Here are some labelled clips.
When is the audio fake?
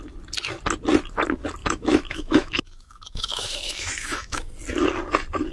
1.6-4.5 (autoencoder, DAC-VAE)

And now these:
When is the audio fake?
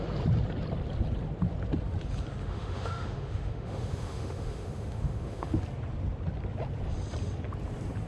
2.4-5.6 (autoencoder, DAC-VAE)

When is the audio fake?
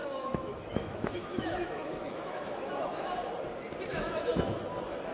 0.0-3.1 (autoencoder, DAC-VAE); 3.9-4.6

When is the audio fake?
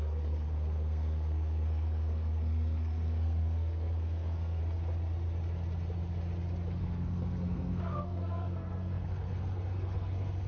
0.0-4.6 (codec, SNAC); 6.8-10.5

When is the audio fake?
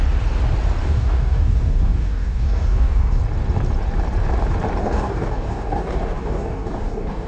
0.8-3.2 (codec, DAC); 4.8-7.3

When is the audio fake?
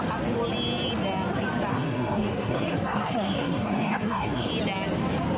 1.7-4.5 (codec, SNAC)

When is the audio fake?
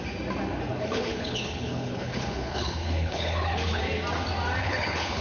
0.7-3.8 (codec, HILCodec); 4.6-5.2